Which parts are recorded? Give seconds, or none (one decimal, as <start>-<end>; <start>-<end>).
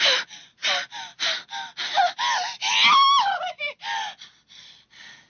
0.0-5.3